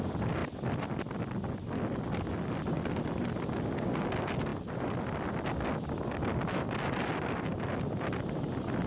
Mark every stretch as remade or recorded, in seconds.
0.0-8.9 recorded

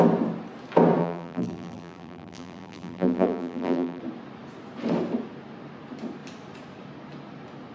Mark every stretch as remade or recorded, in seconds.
0.0-1.0 recorded; 1.0-4.0 remade; 4.0-7.7 recorded